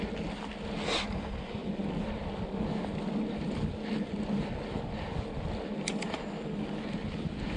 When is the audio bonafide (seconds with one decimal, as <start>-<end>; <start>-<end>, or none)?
0.0-7.6